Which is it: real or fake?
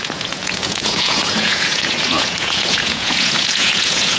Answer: fake